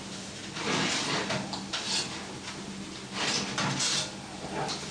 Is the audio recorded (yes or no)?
yes